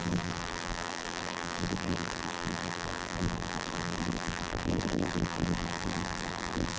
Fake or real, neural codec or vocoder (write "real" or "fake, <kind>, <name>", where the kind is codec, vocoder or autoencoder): fake, vocoder, BigVGAN v2